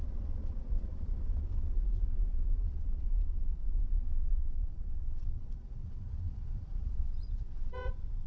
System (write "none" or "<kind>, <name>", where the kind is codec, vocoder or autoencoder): vocoder, Vocos